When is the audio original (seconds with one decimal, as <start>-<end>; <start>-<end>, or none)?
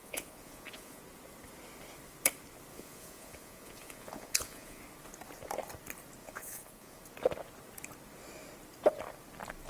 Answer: 1.0-2.7; 4.8-6.2; 7.0-9.7